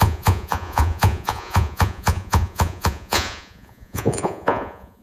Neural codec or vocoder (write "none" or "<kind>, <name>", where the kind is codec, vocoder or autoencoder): vocoder, Vocos